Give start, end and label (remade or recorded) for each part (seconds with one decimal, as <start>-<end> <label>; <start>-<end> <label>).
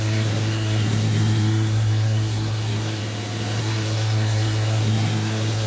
0.0-3.0 remade; 3.0-3.6 recorded; 3.6-5.7 remade